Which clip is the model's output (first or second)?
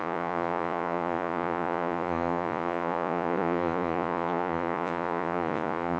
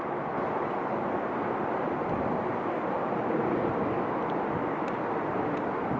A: first